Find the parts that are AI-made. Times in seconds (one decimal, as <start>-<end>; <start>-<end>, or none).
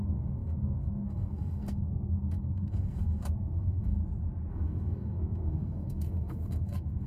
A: 0.0-4.0; 4.5-7.1